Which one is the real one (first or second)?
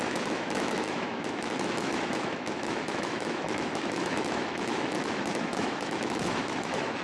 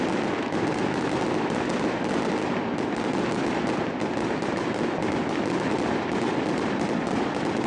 second